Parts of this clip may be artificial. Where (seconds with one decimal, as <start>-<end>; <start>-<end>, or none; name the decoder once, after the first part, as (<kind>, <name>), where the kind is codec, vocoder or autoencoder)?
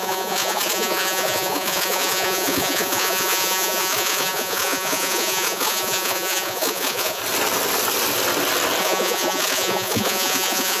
0.0-7.2 (vocoder, Vocos); 8.8-10.8